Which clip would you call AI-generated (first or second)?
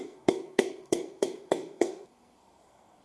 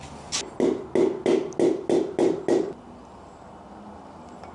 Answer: first